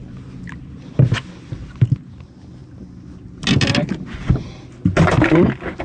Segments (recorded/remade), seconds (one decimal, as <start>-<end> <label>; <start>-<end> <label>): 0.0-5.8 recorded